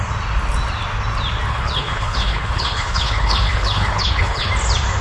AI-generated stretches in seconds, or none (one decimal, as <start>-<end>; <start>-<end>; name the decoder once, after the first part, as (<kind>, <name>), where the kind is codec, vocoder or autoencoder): 1.5-4.5 (codec, HILCodec)